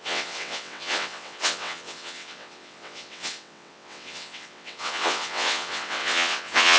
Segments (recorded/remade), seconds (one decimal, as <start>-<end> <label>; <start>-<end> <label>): 0.0-6.8 remade